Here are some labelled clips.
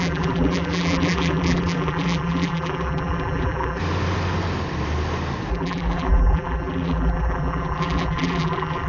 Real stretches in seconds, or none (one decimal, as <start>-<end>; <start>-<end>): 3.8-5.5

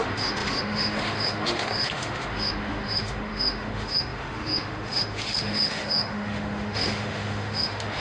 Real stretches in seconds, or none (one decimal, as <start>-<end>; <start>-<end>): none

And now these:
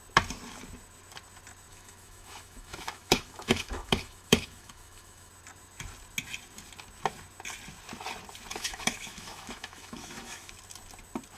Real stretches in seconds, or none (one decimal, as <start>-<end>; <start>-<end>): 0.0-1.7; 5.3-8.5; 10.5-11.4

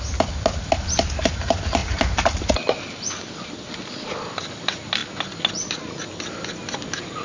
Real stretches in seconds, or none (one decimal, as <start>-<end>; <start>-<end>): 0.0-7.2

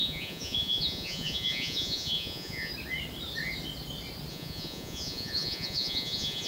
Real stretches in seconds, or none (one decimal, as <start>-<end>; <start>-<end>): 2.7-4.3

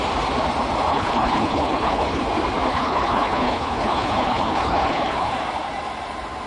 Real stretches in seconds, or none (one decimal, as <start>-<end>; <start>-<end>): 0.0-0.9; 2.2-2.7; 5.3-6.5